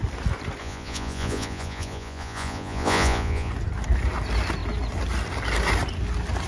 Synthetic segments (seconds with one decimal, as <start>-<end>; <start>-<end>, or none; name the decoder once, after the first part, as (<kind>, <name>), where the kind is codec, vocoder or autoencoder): 0.6-3.5 (vocoder, Vocos)